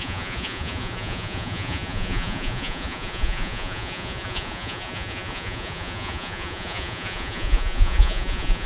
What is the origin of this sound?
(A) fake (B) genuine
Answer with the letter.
A